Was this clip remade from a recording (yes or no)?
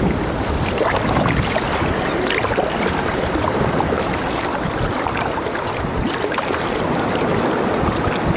no